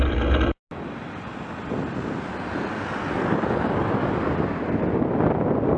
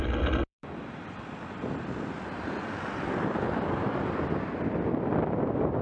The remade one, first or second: second